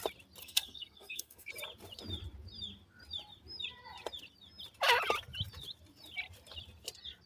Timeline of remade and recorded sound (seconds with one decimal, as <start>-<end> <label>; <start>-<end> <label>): 0.0-0.4 recorded; 0.4-1.5 remade; 1.5-7.3 recorded